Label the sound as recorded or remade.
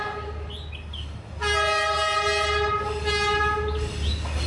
recorded